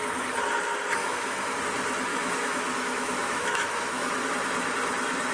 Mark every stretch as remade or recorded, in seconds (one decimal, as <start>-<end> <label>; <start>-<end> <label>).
0.0-1.0 recorded; 1.0-1.6 remade; 1.6-2.1 recorded; 2.1-4.3 remade; 4.3-5.3 recorded